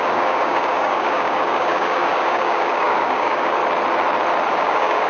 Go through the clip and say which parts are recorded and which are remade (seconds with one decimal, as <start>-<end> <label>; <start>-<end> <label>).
0.0-3.6 remade; 3.6-4.5 recorded; 4.5-5.1 remade